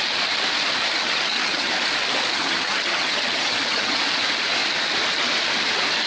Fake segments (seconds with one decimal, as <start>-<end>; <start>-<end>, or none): 0.8-1.7; 2.3-4.0